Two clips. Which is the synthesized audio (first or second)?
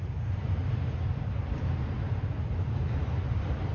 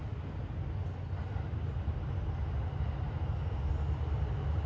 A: first